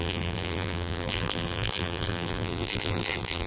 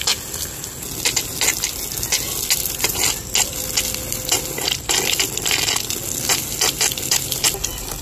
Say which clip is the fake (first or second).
first